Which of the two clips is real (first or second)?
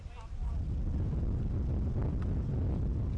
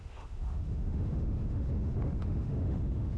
first